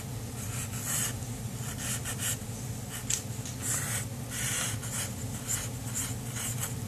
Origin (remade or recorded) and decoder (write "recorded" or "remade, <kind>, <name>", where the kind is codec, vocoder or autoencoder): recorded